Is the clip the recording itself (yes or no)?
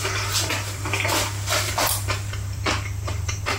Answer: no